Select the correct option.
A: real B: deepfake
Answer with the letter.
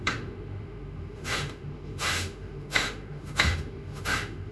B